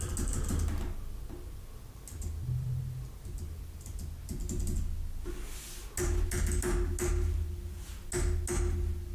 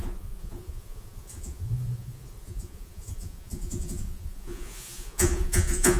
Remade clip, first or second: second